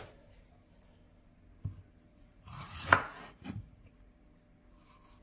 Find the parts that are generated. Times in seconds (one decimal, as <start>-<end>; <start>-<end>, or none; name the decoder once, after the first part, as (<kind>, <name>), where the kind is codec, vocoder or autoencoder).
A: 2.1-3.9 (vocoder, Vocos)